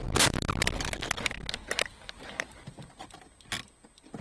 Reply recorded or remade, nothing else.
recorded